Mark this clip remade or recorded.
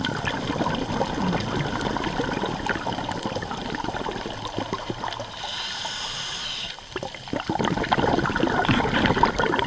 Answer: recorded